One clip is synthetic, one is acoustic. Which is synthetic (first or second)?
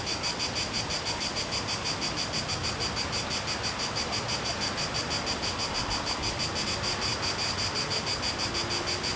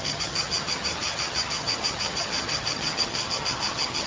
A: second